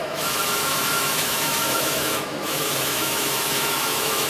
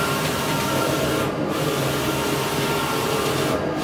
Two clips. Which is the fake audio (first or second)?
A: first